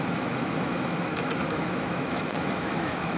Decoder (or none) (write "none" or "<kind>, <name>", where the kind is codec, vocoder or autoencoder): autoencoder, DAC-VAE